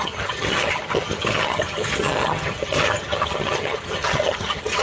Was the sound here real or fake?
fake